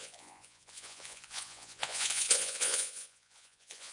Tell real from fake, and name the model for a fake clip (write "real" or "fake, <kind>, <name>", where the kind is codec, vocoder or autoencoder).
fake, vocoder, Vocos